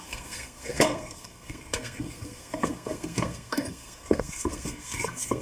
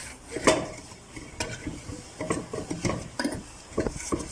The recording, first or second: second